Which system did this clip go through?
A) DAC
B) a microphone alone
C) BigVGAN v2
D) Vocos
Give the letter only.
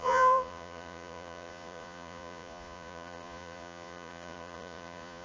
D